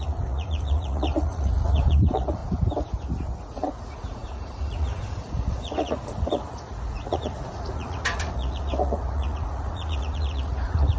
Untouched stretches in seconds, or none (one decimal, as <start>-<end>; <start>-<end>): 2.4-3.4